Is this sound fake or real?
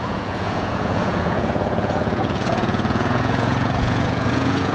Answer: fake